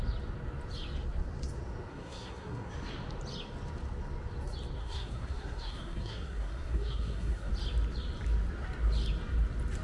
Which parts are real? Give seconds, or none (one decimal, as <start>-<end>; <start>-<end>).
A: 0.0-1.9; 2.7-4.8; 7.5-9.8